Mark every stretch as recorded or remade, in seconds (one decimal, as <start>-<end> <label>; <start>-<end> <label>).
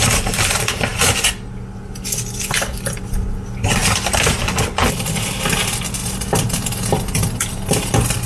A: 0.0-8.3 recorded